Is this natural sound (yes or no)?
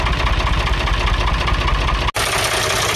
yes